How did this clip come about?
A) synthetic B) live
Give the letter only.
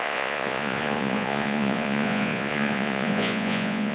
A